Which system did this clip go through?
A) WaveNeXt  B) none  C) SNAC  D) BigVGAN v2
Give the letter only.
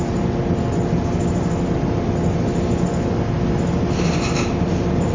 B